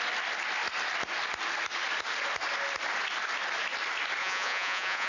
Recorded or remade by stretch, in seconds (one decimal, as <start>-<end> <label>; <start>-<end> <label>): 0.0-4.2 recorded; 4.2-5.1 remade